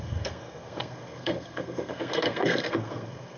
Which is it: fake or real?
fake